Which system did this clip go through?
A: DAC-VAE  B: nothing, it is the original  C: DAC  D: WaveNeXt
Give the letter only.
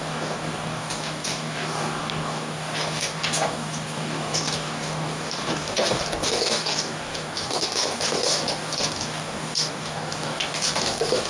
C